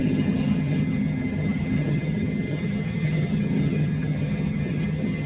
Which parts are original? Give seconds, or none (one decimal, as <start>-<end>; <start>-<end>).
none